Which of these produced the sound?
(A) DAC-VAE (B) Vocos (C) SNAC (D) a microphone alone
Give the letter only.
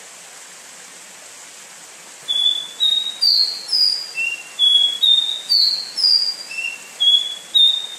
D